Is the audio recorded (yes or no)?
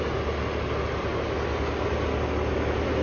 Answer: yes